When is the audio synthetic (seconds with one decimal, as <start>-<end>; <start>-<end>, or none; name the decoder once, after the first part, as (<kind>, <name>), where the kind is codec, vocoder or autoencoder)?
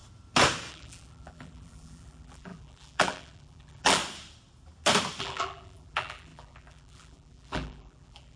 0.7-4.0 (vocoder, BigVGAN v2); 5.2-8.4